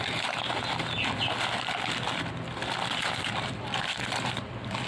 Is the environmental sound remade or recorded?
recorded